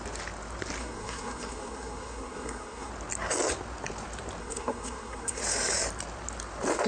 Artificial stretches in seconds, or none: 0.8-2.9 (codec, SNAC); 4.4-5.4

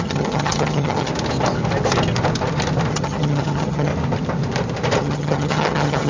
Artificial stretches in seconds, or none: 0.0-1.1 (vocoder, HiFi-GAN); 2.9-3.9; 5.0-6.1

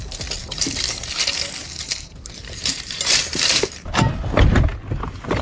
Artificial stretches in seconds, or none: 0.4-1.1 (vocoder, BigVGAN v2); 1.6-4.2